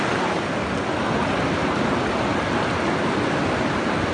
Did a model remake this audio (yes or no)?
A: no